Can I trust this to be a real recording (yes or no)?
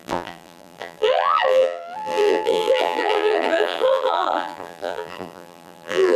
no